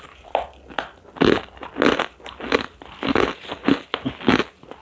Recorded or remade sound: recorded